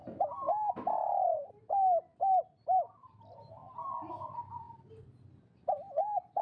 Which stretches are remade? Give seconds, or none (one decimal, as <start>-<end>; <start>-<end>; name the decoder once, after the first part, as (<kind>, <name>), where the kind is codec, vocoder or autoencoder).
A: 2.4-3.6 (vocoder, BigVGAN v2); 4.1-6.4